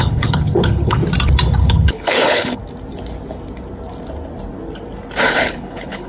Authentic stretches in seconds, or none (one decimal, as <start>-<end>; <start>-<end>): 1.0-1.6; 2.6-5.2